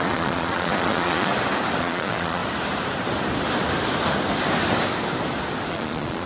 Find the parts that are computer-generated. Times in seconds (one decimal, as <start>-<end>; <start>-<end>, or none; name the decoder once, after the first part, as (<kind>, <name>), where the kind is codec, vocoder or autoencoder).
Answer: 0.0-1.3 (vocoder, Vocos); 1.8-2.4; 5.7-6.3